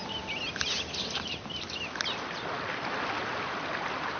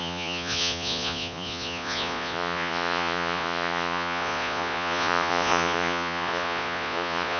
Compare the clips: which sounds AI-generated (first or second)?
second